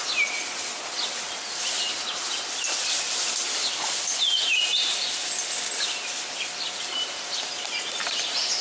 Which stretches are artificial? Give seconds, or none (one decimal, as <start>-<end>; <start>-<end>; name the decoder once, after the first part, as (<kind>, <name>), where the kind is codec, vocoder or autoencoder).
none